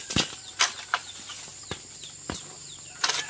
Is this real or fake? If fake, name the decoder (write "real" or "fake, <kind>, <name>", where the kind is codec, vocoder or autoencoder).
real